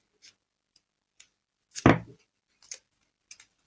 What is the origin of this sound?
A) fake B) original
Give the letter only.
B